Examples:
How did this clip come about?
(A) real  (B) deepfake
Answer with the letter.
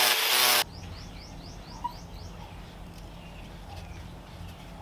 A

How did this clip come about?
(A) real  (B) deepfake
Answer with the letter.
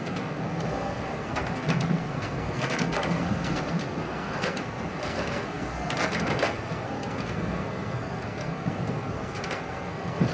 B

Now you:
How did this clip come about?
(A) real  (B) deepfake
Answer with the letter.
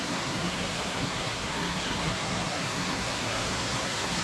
B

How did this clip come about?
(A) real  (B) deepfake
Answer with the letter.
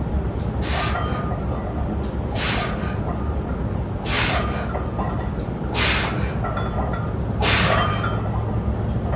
A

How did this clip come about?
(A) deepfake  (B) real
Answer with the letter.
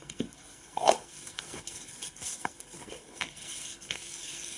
A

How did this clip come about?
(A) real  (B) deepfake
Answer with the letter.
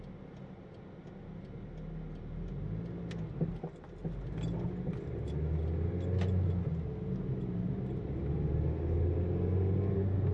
A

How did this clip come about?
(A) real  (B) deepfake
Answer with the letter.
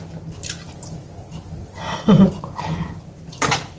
A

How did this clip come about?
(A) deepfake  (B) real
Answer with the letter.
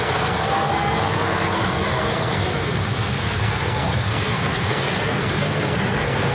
A